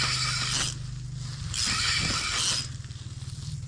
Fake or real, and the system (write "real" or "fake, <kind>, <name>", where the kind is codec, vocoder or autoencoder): real